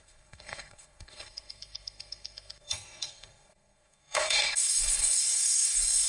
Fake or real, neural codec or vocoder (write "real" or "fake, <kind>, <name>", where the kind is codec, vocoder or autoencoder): fake, codec, SNAC